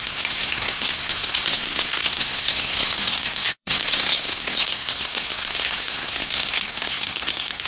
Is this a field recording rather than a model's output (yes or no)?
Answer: no